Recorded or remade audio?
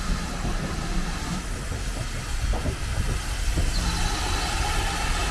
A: recorded